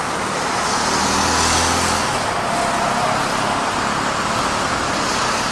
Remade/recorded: recorded